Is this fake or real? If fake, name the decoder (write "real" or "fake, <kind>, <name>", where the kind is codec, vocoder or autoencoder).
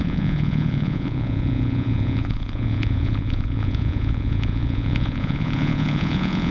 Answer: fake, vocoder, Vocos